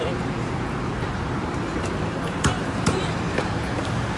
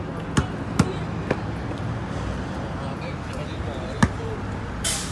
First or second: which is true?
second